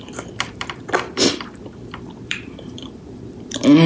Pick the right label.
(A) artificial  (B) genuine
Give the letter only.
A